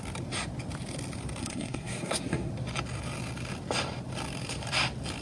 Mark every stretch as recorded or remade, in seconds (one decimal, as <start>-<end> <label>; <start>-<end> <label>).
0.0-1.4 recorded; 1.4-2.5 remade; 2.5-5.2 recorded